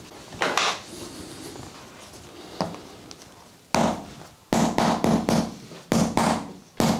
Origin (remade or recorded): recorded